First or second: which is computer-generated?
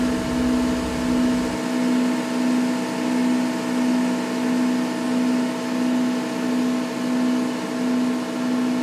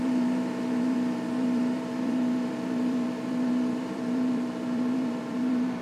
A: second